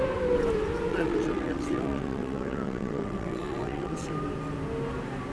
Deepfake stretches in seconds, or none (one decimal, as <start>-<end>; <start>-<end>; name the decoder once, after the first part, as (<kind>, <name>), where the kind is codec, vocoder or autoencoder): 0.9-4.1 (vocoder, WaveNeXt)